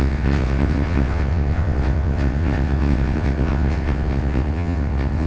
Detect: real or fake fake